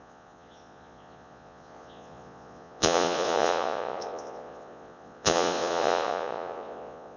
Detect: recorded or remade remade